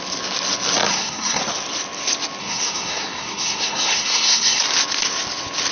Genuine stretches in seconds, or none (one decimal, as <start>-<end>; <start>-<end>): 0.0-0.9; 1.4-2.4; 4.6-5.7